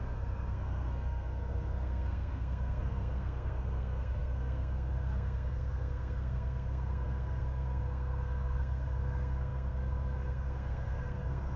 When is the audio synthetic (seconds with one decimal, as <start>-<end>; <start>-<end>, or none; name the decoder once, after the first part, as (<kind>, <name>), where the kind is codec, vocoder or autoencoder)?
0.0-11.6 (codec, SNAC)